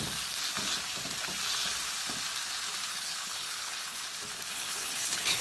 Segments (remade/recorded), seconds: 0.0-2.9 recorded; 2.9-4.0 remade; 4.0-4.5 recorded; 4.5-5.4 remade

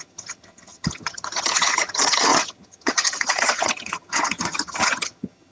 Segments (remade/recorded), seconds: 0.0-5.5 remade

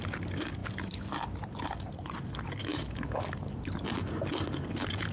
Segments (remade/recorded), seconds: 0.0-2.6 recorded; 2.6-3.3 remade; 3.3-5.1 recorded

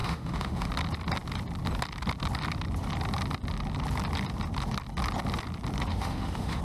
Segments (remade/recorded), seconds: 0.0-0.7 remade; 0.7-5.9 recorded; 5.9-6.6 remade